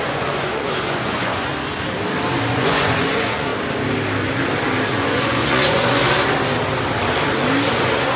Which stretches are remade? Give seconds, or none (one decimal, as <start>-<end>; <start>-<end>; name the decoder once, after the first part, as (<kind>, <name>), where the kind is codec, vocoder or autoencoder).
0.0-1.5 (vocoder, Vocos); 2.5-3.5; 4.9-6.0; 7.7-8.2